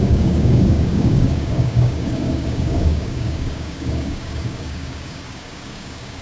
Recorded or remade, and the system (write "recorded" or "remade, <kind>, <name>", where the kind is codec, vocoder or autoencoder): remade, codec, DAC